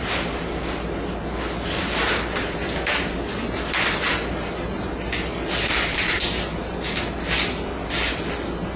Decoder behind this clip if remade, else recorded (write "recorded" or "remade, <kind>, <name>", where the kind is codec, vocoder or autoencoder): recorded